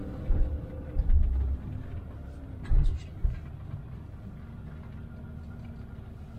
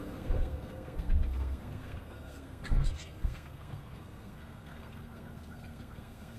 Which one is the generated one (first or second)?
second